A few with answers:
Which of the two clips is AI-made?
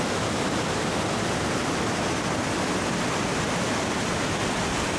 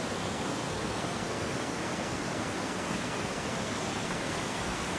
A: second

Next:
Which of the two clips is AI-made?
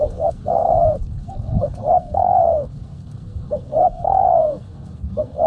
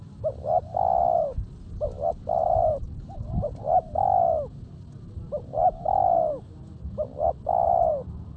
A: first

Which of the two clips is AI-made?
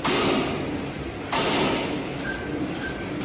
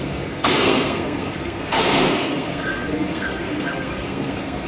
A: second